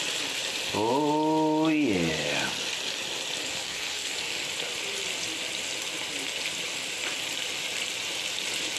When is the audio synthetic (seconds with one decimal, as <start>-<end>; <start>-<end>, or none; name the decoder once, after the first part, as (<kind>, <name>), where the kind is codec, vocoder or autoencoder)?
3.5-4.3 (codec, SNAC)